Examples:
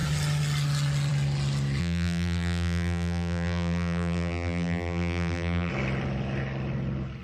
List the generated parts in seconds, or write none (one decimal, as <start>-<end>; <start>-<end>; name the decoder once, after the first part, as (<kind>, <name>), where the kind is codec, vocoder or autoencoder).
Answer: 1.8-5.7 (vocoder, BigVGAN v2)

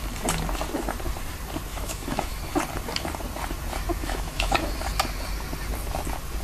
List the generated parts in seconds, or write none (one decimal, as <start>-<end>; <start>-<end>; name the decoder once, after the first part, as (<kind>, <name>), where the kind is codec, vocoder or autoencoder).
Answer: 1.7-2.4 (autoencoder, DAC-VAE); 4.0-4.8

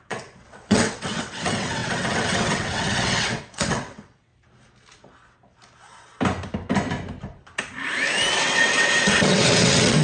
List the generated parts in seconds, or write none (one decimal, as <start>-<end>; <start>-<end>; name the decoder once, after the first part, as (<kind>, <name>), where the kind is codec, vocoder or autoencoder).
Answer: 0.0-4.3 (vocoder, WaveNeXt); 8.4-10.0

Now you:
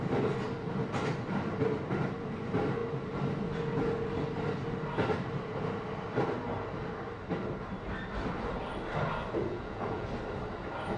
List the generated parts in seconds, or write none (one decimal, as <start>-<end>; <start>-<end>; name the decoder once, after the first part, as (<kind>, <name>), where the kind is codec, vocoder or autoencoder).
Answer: 9.4-10.1 (vocoder, Vocos)

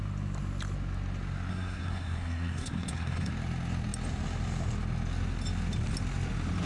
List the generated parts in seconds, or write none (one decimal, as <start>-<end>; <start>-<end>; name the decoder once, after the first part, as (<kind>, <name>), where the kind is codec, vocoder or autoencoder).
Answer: 1.5-3.3 (codec, SNAC)

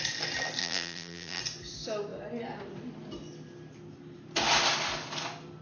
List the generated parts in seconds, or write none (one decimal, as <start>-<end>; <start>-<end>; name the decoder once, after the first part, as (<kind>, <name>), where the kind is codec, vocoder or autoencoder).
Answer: 0.6-1.4 (vocoder, BigVGAN v2)

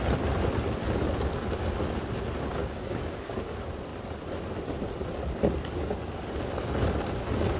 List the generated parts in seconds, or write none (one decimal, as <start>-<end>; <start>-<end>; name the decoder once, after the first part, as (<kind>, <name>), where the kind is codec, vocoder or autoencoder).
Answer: 2.6-3.5 (codec, DAC)